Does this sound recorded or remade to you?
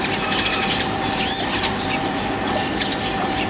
remade